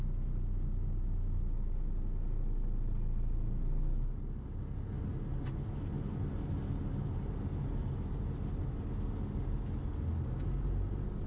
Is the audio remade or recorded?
recorded